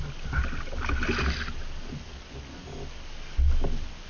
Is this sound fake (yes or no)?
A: no